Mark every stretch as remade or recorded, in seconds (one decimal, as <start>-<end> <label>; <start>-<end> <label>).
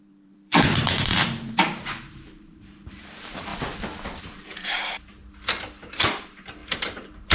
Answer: 0.0-3.5 remade; 3.5-4.2 recorded; 4.2-5.2 remade; 5.2-5.9 recorded; 5.9-7.3 remade